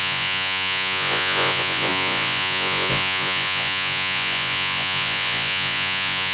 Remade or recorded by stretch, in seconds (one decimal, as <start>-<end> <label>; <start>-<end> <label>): 0.0-6.3 remade